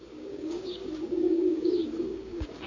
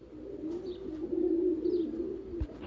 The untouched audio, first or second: second